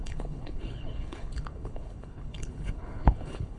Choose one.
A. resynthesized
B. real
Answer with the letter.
A